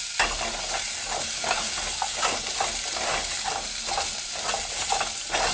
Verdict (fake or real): real